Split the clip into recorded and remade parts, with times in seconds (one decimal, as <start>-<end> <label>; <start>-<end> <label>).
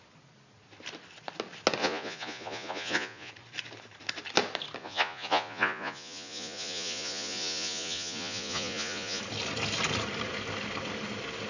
0.0-1.8 recorded; 1.8-3.3 remade; 3.3-4.8 recorded; 4.8-9.2 remade; 9.2-11.5 recorded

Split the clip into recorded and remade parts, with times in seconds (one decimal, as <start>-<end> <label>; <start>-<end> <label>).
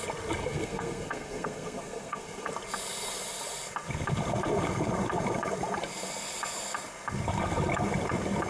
0.0-0.4 recorded; 0.4-2.5 remade; 2.5-8.5 recorded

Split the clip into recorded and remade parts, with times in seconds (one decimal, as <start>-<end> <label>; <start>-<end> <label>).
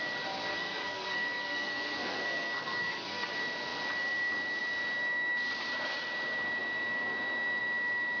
0.0-0.5 recorded; 0.5-3.3 remade; 3.3-8.2 recorded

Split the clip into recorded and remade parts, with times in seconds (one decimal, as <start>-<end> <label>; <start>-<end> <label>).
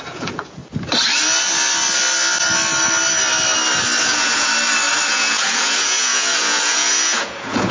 0.0-0.6 remade; 0.6-4.0 recorded; 4.0-4.5 remade; 4.5-5.1 recorded; 5.1-7.7 remade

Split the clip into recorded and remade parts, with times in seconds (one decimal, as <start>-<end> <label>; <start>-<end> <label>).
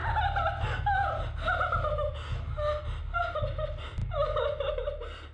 0.0-5.3 recorded